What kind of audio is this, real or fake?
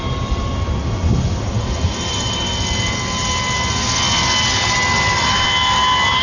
real